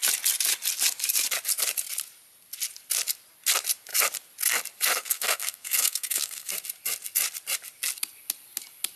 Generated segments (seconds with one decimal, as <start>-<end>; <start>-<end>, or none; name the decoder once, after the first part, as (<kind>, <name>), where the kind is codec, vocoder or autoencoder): 4.9-6.5 (codec, SNAC)